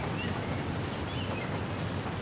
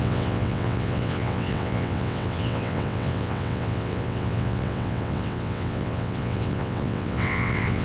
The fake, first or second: second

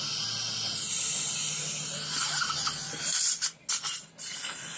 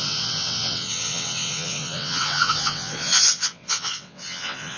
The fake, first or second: second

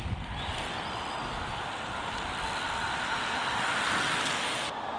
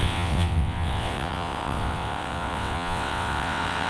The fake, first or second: second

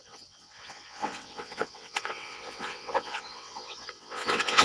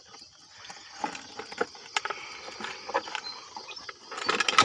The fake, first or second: first